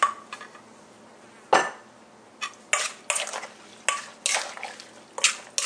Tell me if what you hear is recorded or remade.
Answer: recorded